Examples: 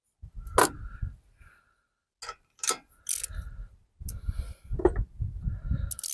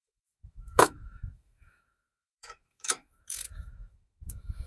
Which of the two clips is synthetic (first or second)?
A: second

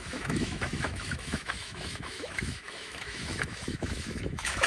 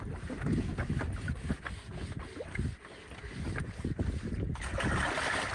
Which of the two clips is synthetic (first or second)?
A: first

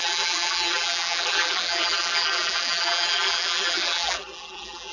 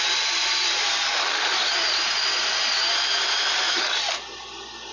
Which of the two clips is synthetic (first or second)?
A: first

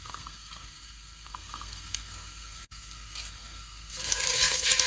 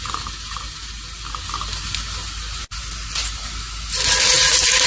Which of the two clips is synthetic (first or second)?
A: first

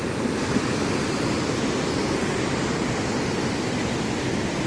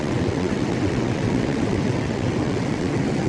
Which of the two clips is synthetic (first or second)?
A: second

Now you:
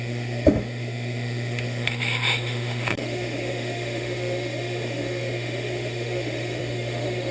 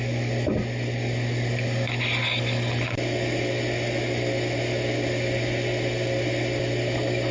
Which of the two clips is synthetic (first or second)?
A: first